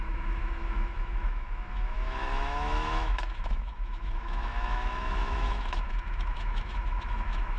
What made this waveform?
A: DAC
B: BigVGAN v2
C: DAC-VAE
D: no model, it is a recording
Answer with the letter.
C